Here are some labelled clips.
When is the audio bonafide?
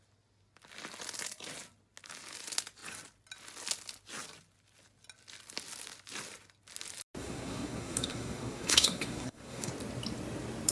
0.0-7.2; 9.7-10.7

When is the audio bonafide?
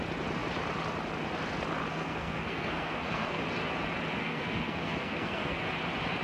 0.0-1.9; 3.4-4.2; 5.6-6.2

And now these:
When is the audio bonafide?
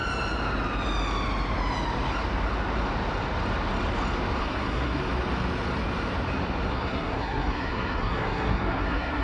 0.0-4.4; 5.0-6.7